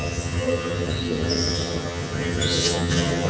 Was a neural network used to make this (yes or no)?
yes